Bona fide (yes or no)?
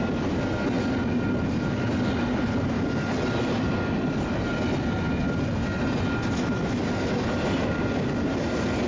yes